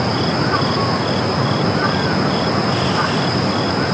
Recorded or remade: recorded